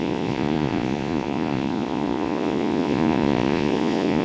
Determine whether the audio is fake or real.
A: fake